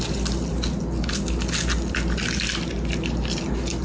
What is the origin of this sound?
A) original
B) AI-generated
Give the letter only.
A